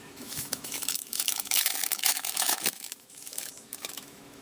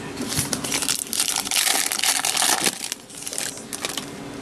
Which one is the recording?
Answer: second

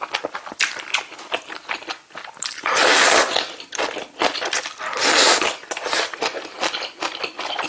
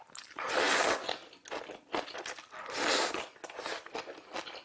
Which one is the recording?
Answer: second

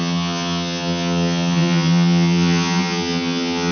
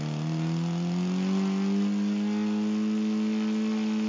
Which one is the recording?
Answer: second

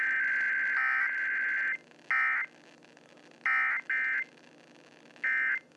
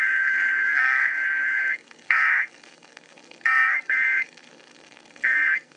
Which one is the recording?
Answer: first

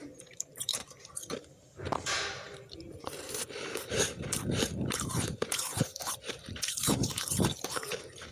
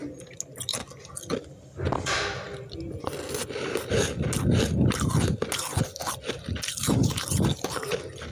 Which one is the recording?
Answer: second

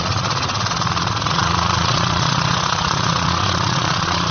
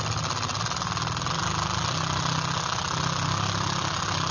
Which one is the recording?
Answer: second